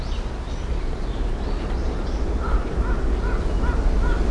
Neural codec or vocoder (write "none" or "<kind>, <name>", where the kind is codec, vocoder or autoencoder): none